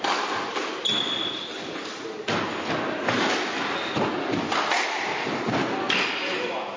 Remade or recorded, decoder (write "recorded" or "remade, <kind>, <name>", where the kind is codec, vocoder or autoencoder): recorded